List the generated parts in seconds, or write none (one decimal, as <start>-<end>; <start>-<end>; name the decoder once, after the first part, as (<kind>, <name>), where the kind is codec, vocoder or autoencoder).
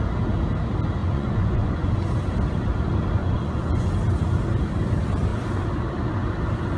1.0-1.9 (vocoder, Vocos); 3.2-3.9